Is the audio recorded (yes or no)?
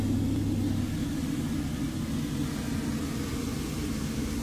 yes